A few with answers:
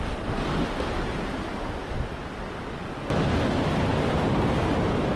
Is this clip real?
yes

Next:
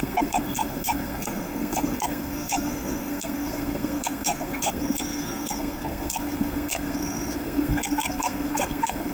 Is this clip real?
no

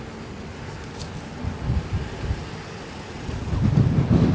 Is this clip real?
yes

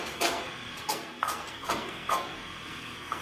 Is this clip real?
no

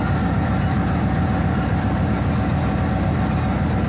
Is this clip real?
yes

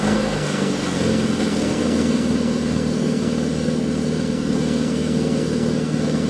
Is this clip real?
no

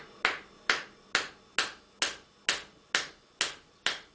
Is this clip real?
yes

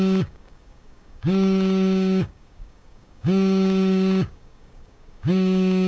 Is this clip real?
no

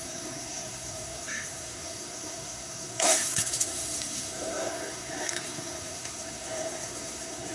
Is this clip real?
no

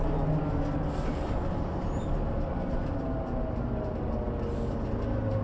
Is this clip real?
yes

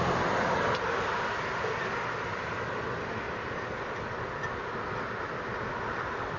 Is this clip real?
yes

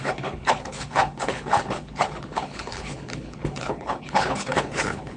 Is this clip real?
no